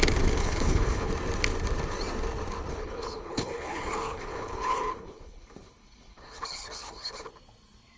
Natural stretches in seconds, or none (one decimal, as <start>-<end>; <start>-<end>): 0.0-0.4; 1.1-2.7; 7.3-8.0